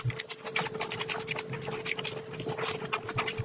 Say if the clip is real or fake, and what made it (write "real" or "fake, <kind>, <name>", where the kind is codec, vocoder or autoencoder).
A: real